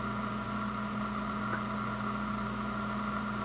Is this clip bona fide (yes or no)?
yes